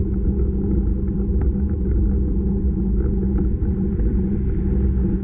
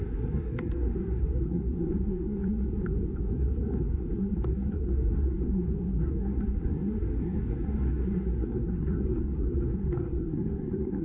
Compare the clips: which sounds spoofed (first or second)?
second